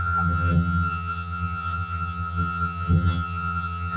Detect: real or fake fake